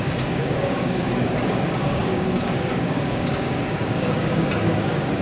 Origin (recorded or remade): remade